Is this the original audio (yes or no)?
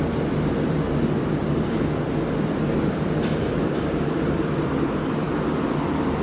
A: no